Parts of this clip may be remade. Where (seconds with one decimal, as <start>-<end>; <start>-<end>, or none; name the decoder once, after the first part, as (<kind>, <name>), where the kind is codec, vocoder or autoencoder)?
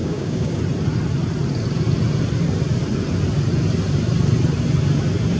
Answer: 0.0-0.6 (codec, DAC)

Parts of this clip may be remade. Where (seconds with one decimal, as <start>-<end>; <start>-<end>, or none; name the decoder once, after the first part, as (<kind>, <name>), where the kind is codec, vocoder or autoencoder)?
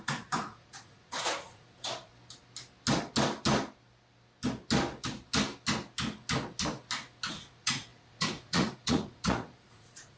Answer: 0.0-2.1 (vocoder, Vocos); 7.3-10.2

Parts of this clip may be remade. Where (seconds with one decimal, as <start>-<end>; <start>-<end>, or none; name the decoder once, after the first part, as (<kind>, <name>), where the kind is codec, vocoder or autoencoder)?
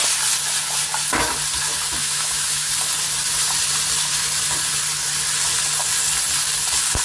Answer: 2.0-2.7 (autoencoder, DAC-VAE)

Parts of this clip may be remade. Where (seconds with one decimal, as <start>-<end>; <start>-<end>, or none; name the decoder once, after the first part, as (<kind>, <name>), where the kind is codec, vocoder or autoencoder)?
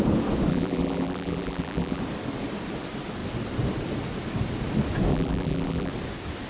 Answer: 0.5-2.0 (vocoder, BigVGAN v2); 5.1-5.9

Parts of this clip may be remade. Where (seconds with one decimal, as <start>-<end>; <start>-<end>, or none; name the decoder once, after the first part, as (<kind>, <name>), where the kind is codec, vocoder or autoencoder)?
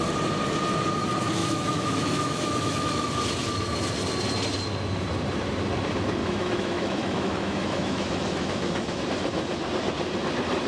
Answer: 1.4-3.1 (autoencoder, DAC-VAE); 6.2-9.0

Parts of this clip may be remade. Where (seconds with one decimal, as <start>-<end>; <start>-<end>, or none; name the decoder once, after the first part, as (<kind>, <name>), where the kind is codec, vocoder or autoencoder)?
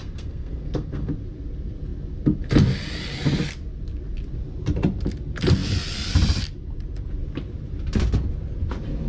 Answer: 0.0-1.1 (codec, SNAC)